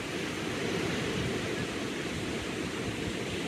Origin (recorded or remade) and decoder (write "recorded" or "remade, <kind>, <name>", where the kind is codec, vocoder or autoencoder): remade, vocoder, BigVGAN v2